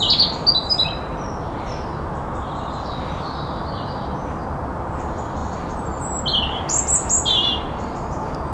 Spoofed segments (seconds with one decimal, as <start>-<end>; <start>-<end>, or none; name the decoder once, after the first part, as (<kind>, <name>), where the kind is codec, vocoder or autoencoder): none